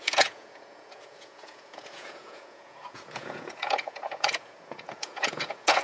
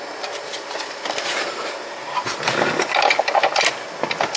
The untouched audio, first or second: second